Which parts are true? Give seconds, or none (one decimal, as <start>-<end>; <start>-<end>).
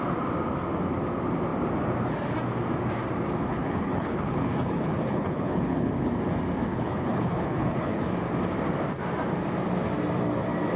0.0-3.5; 5.9-6.7; 8.0-10.8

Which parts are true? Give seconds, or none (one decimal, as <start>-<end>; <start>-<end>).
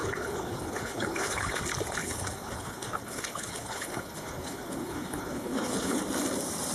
1.6-2.0; 6.0-6.7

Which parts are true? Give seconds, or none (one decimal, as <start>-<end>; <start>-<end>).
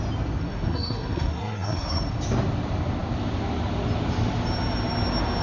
0.0-0.4; 2.0-5.4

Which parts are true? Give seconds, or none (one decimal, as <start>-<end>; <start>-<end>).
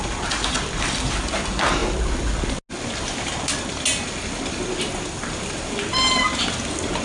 0.0-7.0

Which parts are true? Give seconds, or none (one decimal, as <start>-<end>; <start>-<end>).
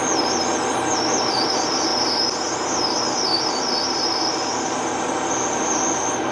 0.0-6.3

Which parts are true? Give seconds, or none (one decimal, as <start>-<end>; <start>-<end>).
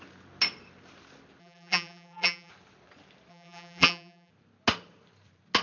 0.0-1.4; 2.5-3.3; 4.3-5.6